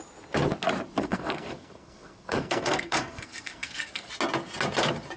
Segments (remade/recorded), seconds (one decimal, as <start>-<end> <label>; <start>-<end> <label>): 0.0-1.0 recorded; 1.0-4.1 remade; 4.1-5.2 recorded